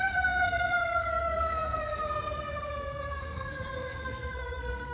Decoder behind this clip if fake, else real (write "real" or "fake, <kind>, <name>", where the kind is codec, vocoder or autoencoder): fake, codec, SNAC